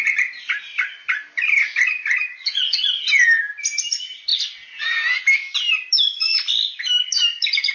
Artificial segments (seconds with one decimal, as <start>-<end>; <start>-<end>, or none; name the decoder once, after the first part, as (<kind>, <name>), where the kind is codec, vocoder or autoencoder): none